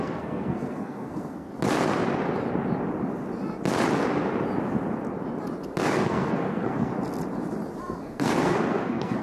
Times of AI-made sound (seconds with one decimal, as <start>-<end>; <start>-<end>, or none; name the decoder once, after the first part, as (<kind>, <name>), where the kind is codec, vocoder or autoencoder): 0.0-1.5 (codec, SNAC); 5.8-6.9; 7.8-9.2